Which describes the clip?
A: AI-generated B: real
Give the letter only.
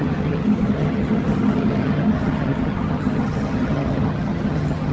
A